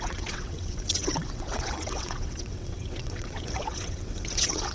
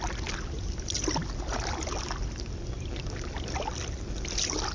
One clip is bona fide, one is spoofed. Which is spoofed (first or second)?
first